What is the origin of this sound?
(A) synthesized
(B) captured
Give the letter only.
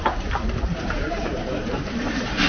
A